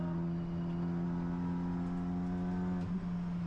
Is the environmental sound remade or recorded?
recorded